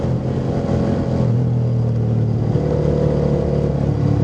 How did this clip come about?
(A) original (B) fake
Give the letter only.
A